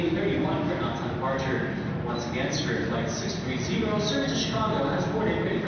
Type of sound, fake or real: real